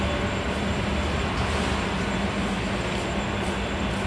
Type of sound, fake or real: real